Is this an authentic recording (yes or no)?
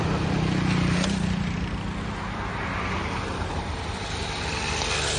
yes